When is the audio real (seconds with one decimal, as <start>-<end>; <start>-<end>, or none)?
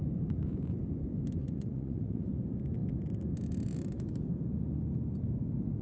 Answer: 0.0-1.4; 2.3-5.8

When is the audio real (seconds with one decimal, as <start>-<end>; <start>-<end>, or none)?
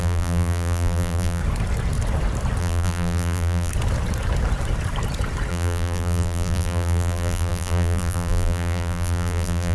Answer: 1.4-2.6; 3.7-5.5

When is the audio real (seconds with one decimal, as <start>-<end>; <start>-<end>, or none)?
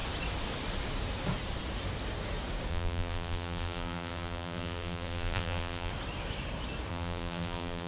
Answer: 0.0-2.7; 5.9-6.9